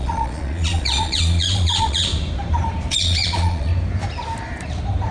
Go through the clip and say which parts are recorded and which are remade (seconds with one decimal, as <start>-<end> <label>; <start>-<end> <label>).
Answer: 0.0-2.1 remade; 2.1-2.9 recorded; 2.9-3.7 remade; 3.7-5.1 recorded